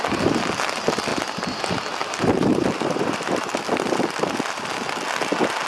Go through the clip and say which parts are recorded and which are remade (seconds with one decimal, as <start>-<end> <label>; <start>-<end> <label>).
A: 0.0-2.0 recorded; 2.0-3.5 remade; 3.5-5.7 recorded